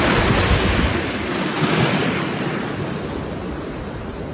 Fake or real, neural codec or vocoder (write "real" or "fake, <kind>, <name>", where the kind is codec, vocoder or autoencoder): real